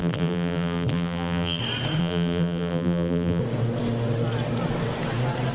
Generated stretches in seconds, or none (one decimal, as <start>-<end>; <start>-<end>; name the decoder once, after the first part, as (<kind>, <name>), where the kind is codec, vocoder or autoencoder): 0.0-1.6 (vocoder, BigVGAN v2); 2.0-3.4

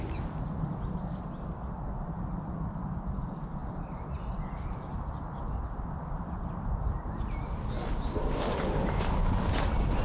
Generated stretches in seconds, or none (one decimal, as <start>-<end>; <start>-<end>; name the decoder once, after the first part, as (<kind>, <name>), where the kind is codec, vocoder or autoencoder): none

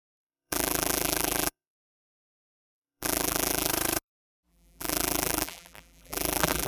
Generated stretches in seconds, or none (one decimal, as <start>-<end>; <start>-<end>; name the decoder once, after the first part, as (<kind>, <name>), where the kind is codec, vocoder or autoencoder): 0.0-3.7 (vocoder, BigVGAN v2); 4.5-6.7

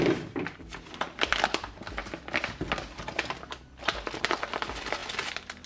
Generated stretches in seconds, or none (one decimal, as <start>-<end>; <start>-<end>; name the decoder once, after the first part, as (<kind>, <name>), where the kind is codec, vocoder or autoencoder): 0.0-2.0 (vocoder, BigVGAN v2); 3.6-5.0

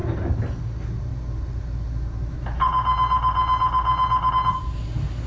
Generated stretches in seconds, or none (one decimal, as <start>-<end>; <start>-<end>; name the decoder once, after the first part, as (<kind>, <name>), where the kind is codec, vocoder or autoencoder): none

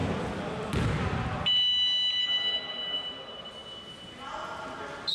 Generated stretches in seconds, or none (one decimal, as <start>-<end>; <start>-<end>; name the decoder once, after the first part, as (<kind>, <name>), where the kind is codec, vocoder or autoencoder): none